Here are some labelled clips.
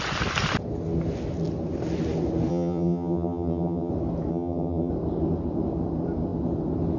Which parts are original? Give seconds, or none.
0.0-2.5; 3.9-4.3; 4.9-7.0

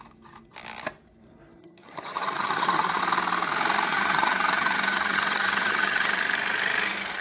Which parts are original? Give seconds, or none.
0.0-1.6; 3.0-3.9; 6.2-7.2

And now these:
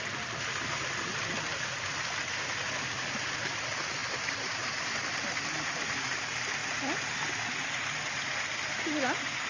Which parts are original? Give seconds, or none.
0.0-9.5

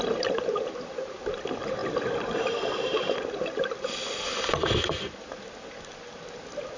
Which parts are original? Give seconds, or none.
0.0-6.8

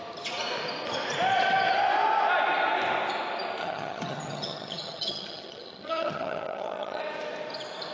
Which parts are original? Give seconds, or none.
0.0-3.6; 7.0-7.9